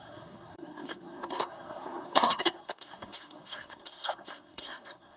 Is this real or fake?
fake